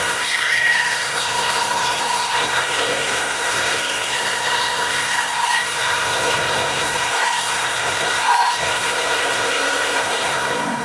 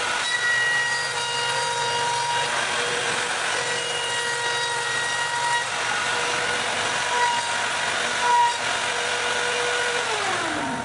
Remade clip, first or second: first